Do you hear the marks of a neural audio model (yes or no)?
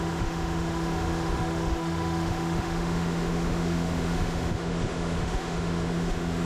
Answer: yes